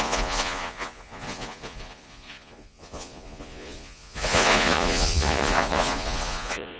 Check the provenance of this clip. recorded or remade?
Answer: remade